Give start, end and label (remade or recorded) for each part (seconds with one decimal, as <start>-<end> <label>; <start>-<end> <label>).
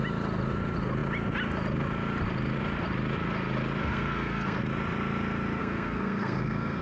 0.0-3.8 recorded; 3.8-4.6 remade; 4.6-5.6 recorded; 5.6-6.8 remade